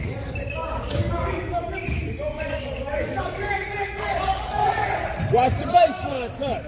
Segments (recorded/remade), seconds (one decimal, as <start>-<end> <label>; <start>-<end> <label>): 0.0-4.6 remade; 4.6-5.7 recorded; 5.7-6.7 remade